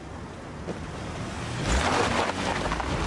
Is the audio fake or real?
real